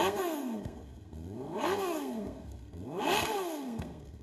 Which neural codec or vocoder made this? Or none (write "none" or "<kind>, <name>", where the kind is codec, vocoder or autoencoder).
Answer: codec, SNAC